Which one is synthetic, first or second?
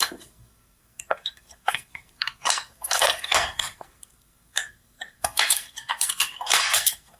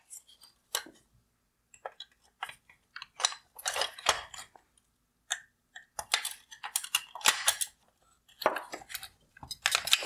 first